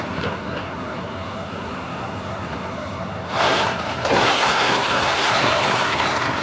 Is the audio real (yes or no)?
no